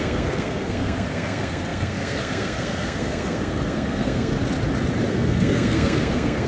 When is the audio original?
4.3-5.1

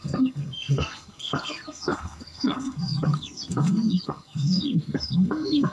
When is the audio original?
none

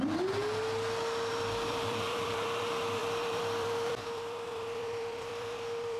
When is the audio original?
0.4-1.3

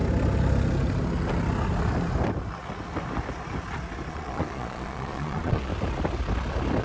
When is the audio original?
0.0-4.1; 5.7-6.8

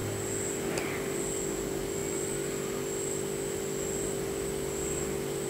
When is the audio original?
0.0-5.5